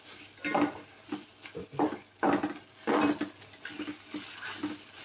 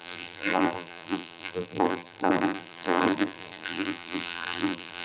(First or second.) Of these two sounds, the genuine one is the first